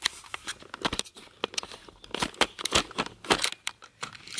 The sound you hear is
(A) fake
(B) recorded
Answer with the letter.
B